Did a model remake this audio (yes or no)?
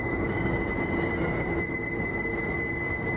no